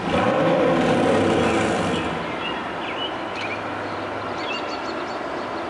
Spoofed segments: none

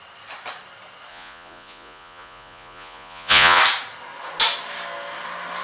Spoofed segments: 1.1-3.6 (vocoder, Vocos)

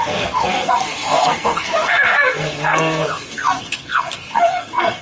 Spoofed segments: 0.0-5.0 (codec, SNAC)

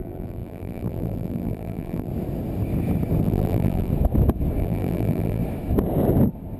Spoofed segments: 0.0-2.1 (vocoder, BigVGAN v2); 3.2-3.9; 4.6-5.4

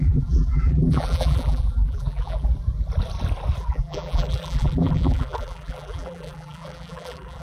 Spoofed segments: 0.0-2.5 (vocoder, BigVGAN v2); 3.6-7.4

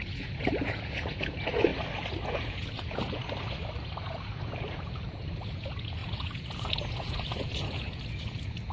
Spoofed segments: 0.0-1.7 (vocoder, Vocos); 2.3-3.2; 4.0-8.7